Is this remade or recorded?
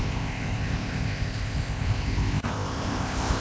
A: remade